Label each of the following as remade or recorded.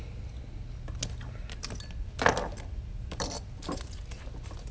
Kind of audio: recorded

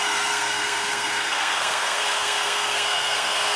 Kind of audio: remade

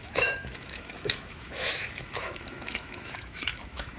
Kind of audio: remade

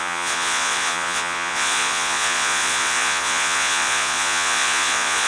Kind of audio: remade